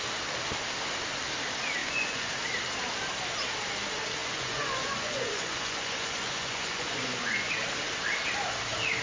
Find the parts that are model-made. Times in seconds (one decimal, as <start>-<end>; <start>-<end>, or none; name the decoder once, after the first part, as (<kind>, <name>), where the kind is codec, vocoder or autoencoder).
1.8-2.3 (vocoder, Vocos); 4.2-7.5